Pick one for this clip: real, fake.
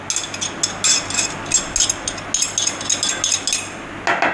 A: real